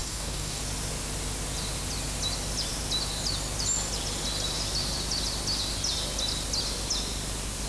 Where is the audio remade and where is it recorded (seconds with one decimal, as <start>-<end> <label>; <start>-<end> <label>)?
0.0-0.6 remade; 0.6-7.7 recorded